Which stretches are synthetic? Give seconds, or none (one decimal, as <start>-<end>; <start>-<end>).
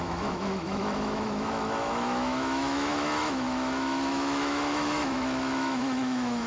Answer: 0.0-6.5